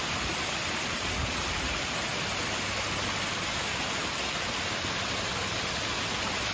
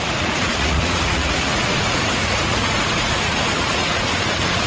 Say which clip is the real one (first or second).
first